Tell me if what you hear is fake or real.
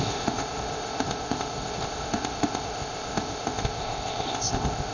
fake